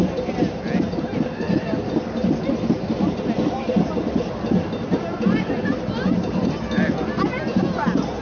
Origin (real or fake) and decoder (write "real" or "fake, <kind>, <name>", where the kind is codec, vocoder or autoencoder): real